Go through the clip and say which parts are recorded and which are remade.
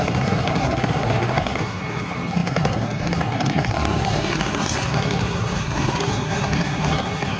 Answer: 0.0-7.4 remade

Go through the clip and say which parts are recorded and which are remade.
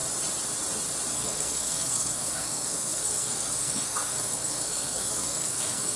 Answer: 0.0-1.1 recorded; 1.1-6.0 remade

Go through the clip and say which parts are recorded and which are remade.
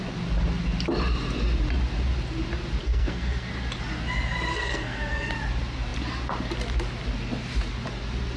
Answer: 0.0-2.8 recorded; 2.8-3.5 remade; 3.5-4.5 recorded; 4.5-5.3 remade; 5.3-8.4 recorded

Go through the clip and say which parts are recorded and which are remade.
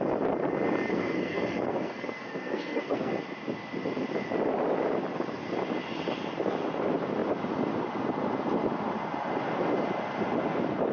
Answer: 0.0-0.9 recorded; 0.9-3.1 remade; 3.1-10.9 recorded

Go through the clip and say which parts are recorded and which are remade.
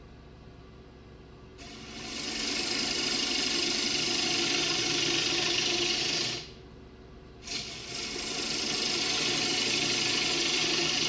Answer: 0.0-11.1 recorded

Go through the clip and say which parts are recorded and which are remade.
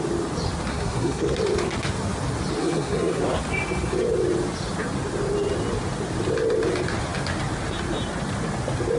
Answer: 0.0-0.7 recorded; 0.7-1.4 remade; 1.4-2.6 recorded; 2.6-3.2 remade; 3.2-9.0 recorded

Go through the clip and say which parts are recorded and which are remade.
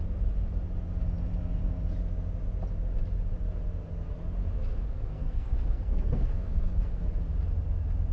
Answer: 0.0-4.7 recorded; 4.7-7.2 remade; 7.2-8.1 recorded